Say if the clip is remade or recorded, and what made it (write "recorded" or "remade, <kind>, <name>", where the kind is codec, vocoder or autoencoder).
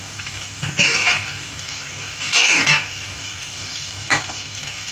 remade, codec, DAC